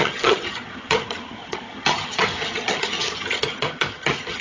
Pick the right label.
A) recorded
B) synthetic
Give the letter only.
B